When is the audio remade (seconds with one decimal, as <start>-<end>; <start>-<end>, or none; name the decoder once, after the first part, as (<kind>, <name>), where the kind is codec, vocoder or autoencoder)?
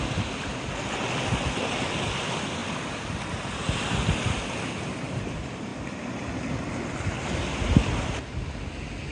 none